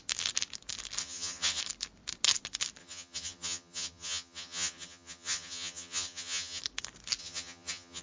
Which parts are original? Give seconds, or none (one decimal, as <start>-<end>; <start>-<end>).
0.0-1.0; 1.6-2.8; 6.6-7.2